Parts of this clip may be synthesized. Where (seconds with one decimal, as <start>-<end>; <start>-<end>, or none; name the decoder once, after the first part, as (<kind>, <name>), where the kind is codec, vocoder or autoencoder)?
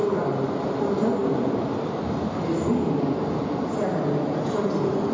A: none